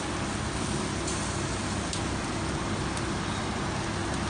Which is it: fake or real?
real